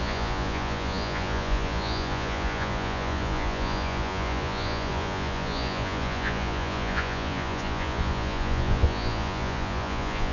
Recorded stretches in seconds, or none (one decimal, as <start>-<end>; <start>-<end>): none